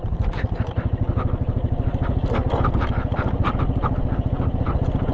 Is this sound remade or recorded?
recorded